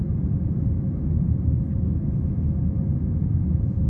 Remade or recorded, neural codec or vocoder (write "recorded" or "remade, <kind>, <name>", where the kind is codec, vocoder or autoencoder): recorded